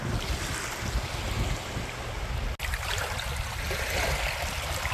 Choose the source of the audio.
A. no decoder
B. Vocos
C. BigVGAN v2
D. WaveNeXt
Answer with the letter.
A